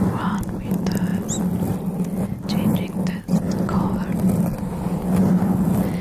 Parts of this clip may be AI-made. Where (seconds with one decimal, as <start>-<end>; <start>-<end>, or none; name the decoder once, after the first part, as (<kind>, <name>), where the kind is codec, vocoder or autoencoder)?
none